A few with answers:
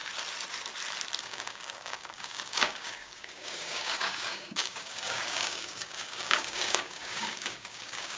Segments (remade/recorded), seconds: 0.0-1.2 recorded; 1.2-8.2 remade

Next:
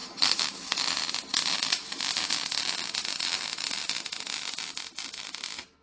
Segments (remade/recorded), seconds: 0.0-0.8 remade; 0.8-5.8 recorded